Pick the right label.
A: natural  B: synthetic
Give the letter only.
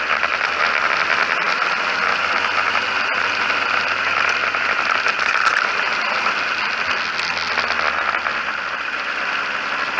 A